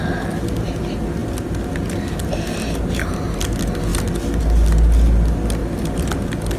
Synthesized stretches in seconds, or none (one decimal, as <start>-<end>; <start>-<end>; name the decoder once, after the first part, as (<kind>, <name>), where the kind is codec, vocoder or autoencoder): 5.6-6.6 (vocoder, BigVGAN v2)